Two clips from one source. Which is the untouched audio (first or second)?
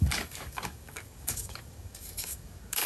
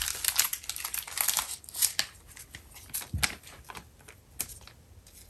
second